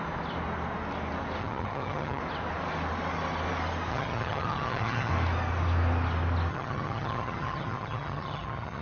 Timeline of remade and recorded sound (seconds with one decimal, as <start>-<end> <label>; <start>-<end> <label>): 0.0-1.4 recorded; 1.4-2.2 remade; 2.2-3.9 recorded; 3.9-5.1 remade; 5.1-6.5 recorded; 6.5-8.8 remade